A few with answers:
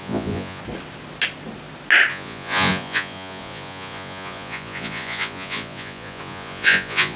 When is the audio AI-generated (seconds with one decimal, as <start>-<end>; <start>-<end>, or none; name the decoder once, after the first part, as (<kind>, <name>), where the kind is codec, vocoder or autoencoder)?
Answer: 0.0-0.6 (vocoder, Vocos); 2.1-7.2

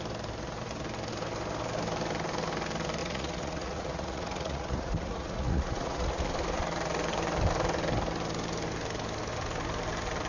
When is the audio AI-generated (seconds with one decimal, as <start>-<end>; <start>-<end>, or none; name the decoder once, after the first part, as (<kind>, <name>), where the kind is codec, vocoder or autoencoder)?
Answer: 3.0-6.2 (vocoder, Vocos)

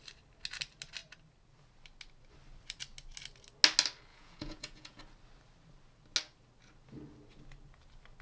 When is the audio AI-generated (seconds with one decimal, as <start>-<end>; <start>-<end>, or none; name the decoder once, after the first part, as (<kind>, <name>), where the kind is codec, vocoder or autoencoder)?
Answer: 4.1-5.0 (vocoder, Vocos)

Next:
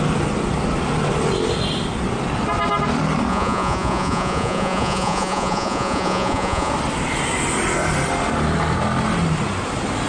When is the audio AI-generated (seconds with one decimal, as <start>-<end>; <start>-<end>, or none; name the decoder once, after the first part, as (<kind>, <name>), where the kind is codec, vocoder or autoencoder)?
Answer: 3.3-6.7 (vocoder, Vocos)

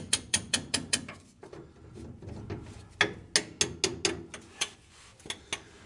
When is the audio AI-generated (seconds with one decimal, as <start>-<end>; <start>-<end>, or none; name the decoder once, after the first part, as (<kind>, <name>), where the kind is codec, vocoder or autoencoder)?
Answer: 0.0-1.4 (vocoder, Vocos); 4.5-5.1